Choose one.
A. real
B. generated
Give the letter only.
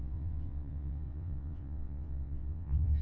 B